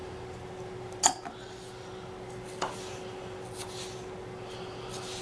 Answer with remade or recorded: recorded